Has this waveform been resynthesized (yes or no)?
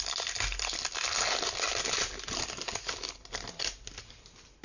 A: no